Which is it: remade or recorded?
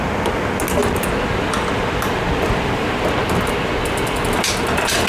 recorded